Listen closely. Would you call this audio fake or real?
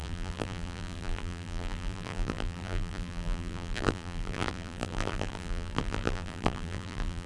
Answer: fake